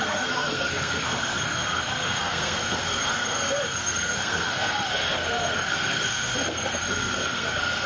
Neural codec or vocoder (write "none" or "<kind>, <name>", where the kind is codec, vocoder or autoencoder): codec, SNAC